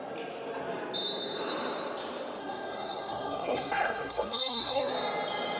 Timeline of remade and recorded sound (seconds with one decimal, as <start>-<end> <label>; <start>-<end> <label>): 0.0-2.4 recorded; 2.4-4.9 remade; 4.9-5.6 recorded